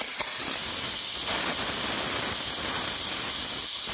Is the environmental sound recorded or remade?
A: recorded